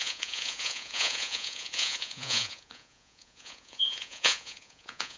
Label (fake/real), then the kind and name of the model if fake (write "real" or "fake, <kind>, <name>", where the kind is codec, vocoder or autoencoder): fake, vocoder, Vocos